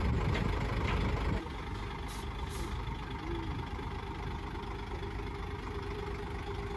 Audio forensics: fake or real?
real